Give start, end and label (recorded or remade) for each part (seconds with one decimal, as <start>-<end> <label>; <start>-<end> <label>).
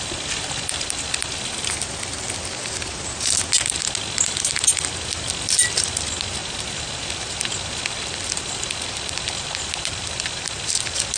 0.0-11.2 recorded